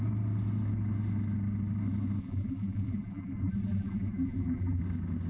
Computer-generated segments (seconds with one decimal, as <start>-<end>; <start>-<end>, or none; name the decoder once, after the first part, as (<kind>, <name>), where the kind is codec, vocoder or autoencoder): 2.2-4.8 (vocoder, BigVGAN v2)